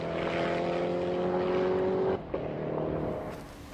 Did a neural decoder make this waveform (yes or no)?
no